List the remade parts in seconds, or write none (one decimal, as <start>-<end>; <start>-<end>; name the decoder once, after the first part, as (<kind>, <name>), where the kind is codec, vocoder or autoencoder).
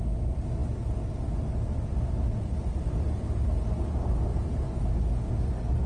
none